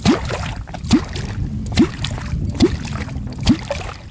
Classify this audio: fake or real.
real